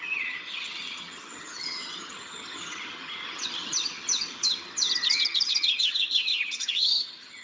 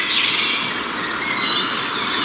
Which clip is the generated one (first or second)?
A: first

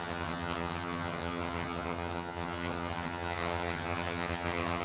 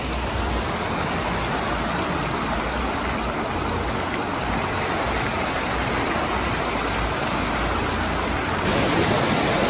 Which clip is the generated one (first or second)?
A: first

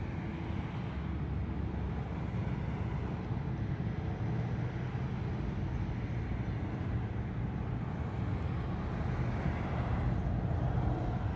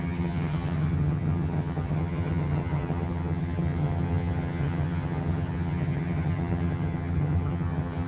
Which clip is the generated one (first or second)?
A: second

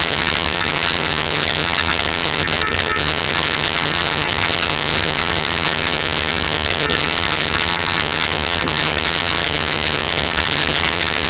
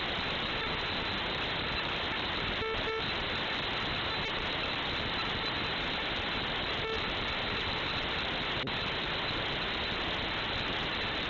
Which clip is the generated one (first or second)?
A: first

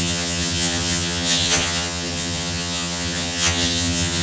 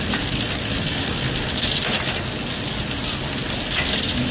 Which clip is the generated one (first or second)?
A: first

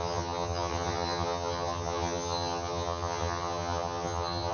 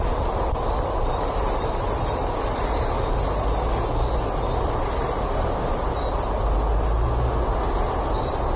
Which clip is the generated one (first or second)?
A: first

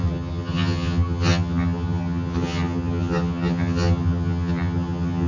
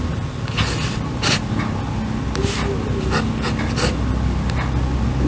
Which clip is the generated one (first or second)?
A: first